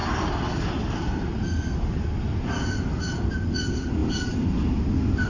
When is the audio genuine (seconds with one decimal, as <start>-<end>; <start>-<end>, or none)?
0.0-5.3